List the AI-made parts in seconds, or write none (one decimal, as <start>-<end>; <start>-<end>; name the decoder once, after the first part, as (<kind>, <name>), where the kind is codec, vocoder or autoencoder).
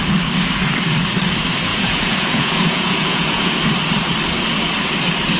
1.7-3.5 (vocoder, Vocos)